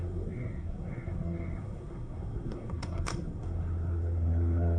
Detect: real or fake fake